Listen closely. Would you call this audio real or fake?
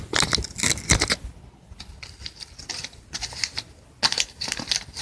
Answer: real